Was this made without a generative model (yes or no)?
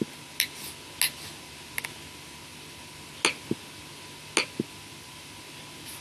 yes